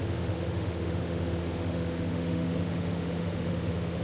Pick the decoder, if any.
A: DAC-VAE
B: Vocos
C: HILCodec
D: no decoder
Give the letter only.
A